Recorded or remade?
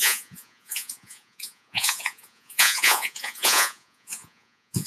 remade